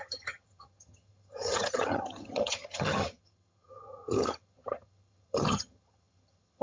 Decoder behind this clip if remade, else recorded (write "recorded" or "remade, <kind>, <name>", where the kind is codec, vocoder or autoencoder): remade, vocoder, HiFi-GAN